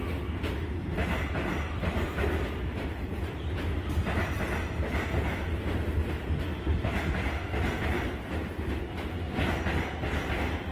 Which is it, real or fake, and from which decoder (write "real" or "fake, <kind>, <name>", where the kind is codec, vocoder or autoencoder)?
real